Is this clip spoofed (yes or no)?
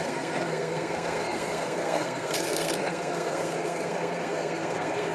yes